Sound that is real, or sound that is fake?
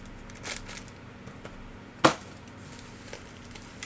real